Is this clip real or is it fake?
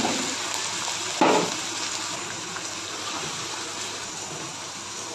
real